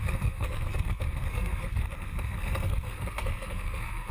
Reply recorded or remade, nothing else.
remade